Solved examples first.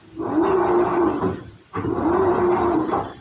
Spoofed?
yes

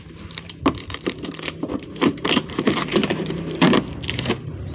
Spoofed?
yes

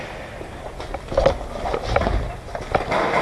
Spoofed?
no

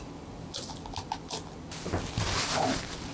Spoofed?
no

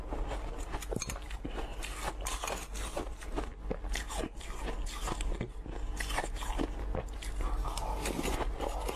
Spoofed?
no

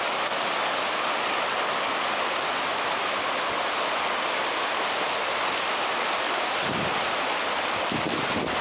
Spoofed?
yes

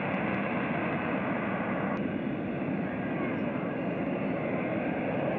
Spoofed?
no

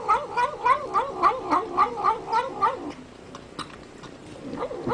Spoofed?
no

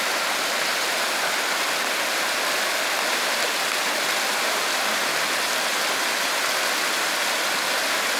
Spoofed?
no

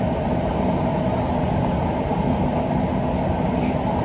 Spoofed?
no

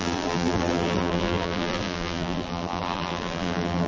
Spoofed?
yes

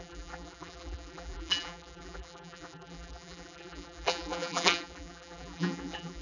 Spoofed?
yes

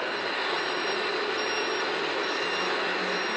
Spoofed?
no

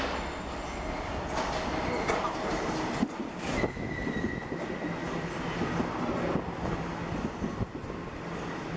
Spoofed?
no